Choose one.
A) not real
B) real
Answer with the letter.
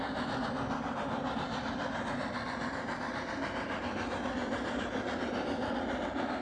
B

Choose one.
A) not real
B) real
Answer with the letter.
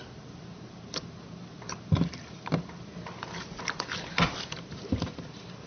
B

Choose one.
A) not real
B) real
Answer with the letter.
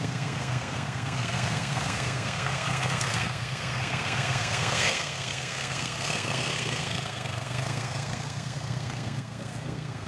A